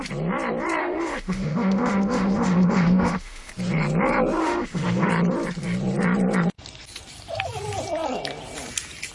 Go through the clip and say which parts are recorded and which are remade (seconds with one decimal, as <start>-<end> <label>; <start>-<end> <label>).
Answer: 0.0-0.8 recorded; 0.8-3.5 remade; 3.5-4.4 recorded; 4.4-5.1 remade; 5.1-9.1 recorded